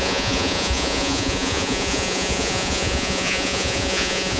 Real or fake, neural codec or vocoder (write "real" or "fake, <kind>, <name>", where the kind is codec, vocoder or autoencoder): fake, vocoder, Vocos